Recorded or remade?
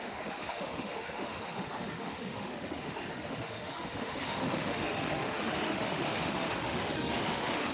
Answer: remade